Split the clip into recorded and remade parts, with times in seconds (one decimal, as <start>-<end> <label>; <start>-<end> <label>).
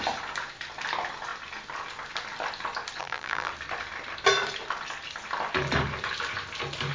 0.0-3.0 recorded; 3.0-3.5 remade; 3.5-6.9 recorded